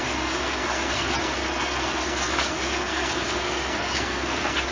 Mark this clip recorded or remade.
remade